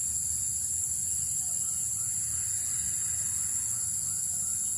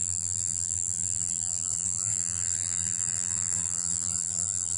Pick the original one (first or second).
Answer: first